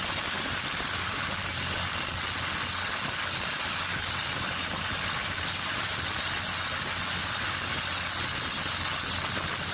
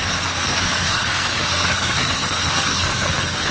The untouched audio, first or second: first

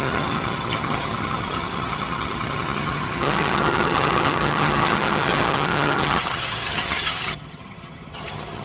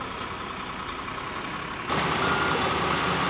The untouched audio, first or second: second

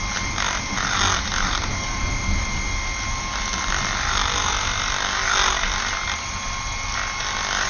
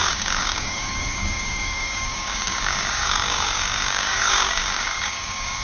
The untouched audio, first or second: first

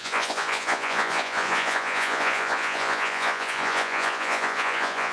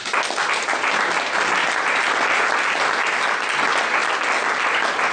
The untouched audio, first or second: second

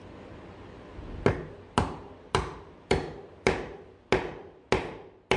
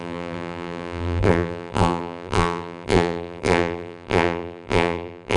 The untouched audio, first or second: first